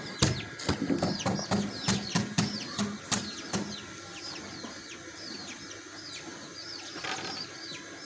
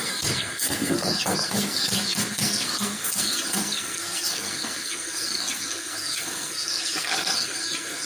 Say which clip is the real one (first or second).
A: first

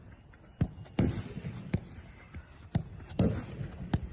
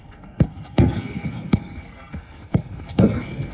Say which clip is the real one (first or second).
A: first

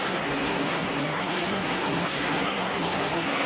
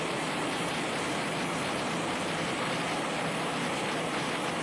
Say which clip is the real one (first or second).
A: second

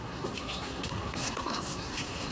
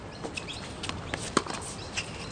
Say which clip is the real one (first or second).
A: second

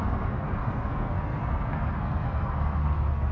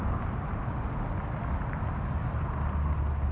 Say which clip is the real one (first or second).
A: second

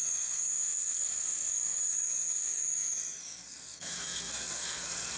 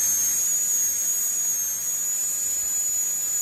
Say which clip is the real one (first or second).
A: second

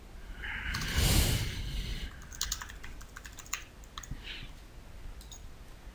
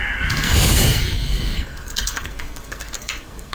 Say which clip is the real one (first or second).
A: first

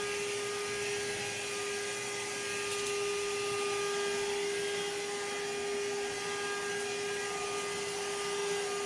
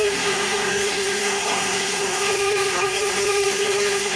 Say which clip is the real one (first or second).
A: first